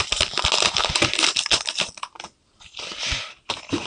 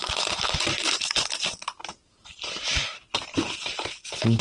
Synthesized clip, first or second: second